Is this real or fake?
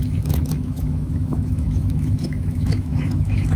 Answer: fake